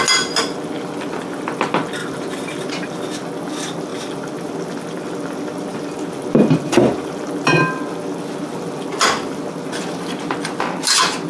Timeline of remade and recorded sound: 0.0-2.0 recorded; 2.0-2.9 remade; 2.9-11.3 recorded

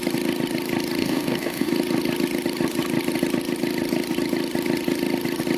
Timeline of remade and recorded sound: 0.0-1.0 recorded; 1.0-1.7 remade; 1.7-5.6 recorded

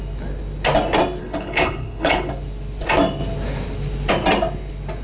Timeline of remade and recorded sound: 0.0-1.2 recorded; 1.2-2.3 remade; 2.3-5.0 recorded

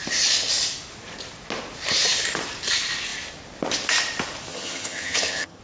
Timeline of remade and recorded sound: 0.0-4.5 recorded; 4.5-5.6 remade

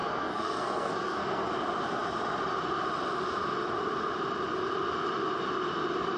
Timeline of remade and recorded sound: 0.0-1.5 remade; 1.5-6.2 recorded

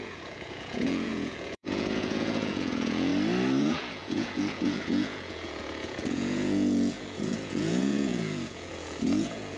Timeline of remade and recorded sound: 0.0-3.1 remade; 3.1-3.6 recorded; 3.6-9.6 remade

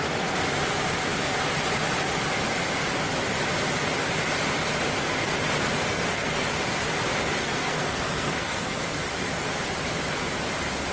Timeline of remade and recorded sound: 0.0-5.9 recorded; 5.9-6.5 remade; 6.5-7.4 recorded; 7.4-8.8 remade; 8.8-10.9 recorded

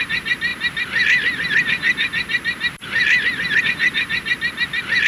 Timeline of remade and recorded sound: 0.0-5.1 recorded